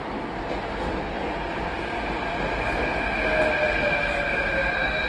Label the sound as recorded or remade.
recorded